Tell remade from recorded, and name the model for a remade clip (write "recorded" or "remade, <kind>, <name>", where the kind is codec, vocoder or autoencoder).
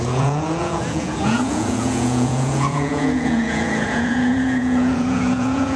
remade, vocoder, Vocos